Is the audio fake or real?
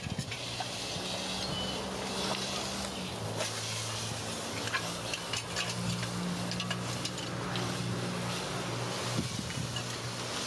real